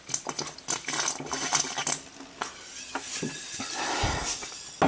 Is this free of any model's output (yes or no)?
yes